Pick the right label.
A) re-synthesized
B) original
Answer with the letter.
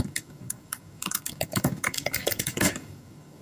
A